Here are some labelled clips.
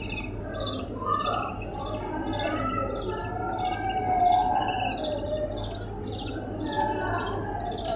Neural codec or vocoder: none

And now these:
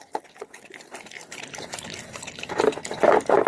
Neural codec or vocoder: none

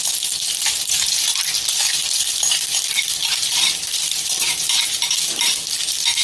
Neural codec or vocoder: none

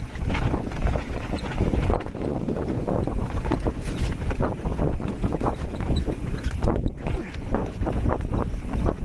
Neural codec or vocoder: vocoder, Vocos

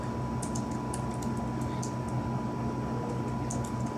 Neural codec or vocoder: none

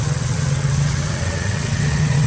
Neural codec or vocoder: vocoder, WaveNeXt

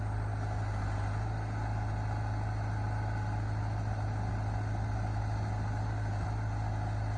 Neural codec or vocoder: none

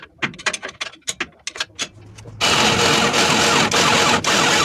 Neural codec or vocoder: none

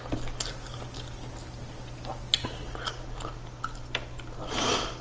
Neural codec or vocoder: none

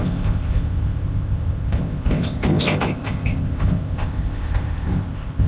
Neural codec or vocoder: codec, ZipCodec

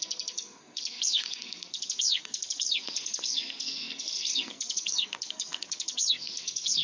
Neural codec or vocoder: codec, SNAC